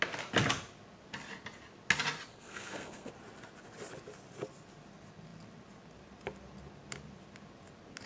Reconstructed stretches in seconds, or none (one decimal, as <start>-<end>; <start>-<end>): 2.3-3.1